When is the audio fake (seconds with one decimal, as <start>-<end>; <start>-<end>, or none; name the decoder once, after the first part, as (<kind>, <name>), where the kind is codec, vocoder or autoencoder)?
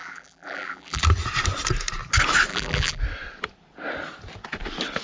0.0-1.0 (vocoder, BigVGAN v2); 2.5-3.0